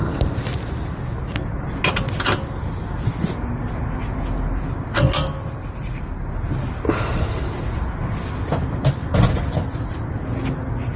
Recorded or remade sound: recorded